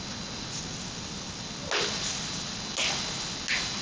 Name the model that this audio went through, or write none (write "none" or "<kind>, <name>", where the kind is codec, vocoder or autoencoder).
none